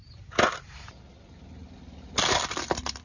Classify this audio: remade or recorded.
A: recorded